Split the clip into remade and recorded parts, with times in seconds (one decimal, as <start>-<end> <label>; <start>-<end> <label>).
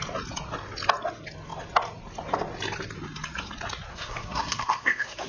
0.0-3.9 recorded; 3.9-5.3 remade